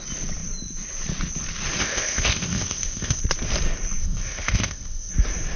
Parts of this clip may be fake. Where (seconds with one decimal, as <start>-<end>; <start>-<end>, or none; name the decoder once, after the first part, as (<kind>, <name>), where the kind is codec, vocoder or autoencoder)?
1.8-3.2 (codec, ZipCodec); 4.0-5.1